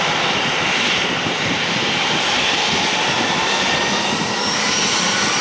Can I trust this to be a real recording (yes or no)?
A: yes